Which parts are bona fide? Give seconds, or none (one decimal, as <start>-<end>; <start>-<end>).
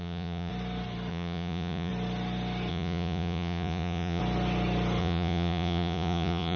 0.5-1.1; 1.9-2.7; 4.2-5.0